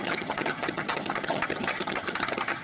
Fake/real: fake